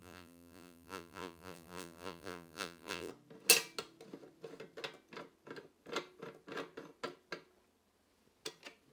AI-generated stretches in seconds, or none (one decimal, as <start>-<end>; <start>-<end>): 0.0-3.1